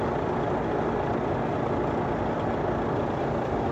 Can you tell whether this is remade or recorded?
recorded